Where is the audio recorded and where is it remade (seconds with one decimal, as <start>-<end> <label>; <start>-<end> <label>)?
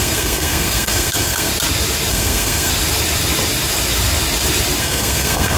0.0-1.5 remade; 1.5-2.1 recorded; 2.1-2.7 remade; 2.7-4.8 recorded; 4.8-5.6 remade